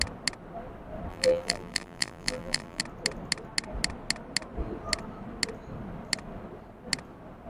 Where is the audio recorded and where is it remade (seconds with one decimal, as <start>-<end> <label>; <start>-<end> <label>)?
0.0-1.1 recorded; 1.1-2.8 remade; 2.8-7.5 recorded